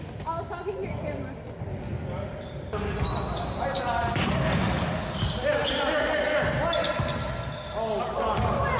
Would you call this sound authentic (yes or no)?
yes